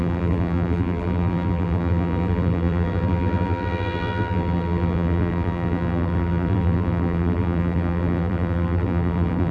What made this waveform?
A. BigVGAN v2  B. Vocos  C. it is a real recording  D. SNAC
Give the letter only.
A